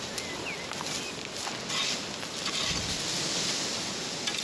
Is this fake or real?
real